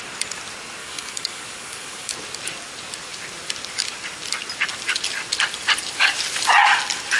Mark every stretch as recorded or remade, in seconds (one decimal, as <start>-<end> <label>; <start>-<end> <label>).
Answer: 0.0-0.8 recorded; 0.8-2.1 remade; 2.1-7.2 recorded